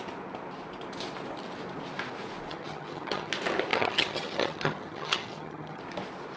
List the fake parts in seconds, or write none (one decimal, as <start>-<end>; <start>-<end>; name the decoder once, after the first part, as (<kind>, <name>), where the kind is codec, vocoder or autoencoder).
2.5-3.3 (vocoder, HiFi-GAN); 3.7-5.8